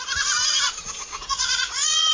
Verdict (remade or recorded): remade